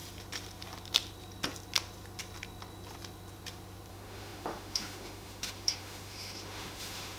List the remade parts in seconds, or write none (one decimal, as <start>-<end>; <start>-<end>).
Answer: 3.9-7.2